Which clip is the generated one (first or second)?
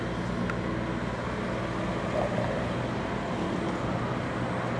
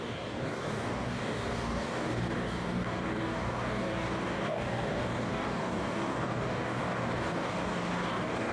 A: second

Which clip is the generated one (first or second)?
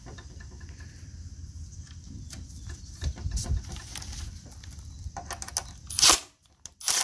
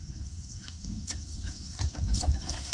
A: second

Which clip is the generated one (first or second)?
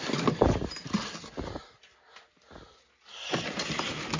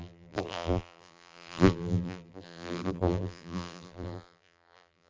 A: second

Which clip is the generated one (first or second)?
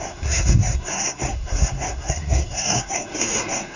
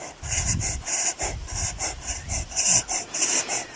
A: first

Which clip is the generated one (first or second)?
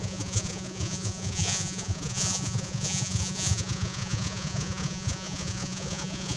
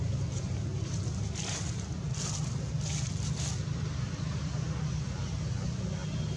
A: first